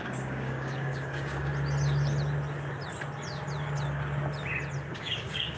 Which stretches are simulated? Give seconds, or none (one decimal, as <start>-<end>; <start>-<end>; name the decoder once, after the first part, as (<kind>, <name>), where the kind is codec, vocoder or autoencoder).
0.0-1.5 (codec, DAC); 4.9-5.6